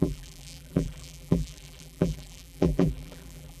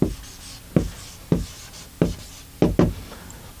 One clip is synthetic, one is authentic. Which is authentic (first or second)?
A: second